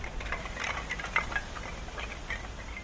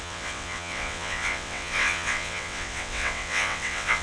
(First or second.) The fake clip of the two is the second